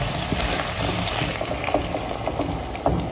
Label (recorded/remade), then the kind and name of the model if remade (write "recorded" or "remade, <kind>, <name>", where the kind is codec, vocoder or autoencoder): recorded